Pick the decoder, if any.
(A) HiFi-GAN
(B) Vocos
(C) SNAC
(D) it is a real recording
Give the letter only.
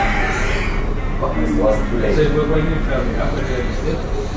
D